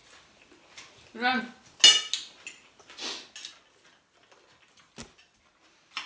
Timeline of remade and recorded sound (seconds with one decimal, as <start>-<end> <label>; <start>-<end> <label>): 0.0-6.1 recorded